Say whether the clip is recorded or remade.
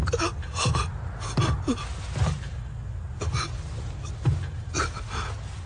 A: recorded